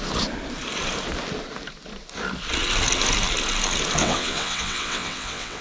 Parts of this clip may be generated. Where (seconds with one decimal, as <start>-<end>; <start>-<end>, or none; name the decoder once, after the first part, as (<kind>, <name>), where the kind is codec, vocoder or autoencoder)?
4.0-5.6 (vocoder, WaveNeXt)